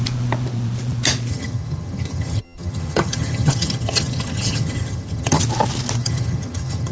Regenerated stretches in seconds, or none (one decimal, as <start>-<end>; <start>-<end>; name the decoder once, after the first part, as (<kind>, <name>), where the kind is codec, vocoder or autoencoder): 1.3-5.4 (vocoder, HiFi-GAN); 6.0-6.9